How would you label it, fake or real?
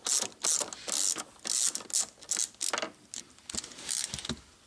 real